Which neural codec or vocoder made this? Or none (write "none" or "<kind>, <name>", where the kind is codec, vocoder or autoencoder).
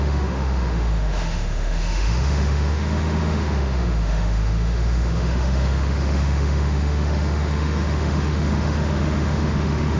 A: autoencoder, DAC-VAE